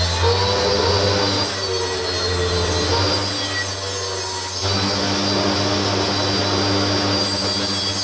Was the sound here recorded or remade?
recorded